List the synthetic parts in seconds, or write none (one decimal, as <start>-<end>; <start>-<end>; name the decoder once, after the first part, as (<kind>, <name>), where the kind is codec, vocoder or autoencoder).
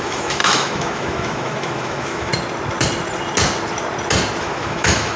0.0-2.3 (autoencoder, DAC-VAE); 4.4-5.2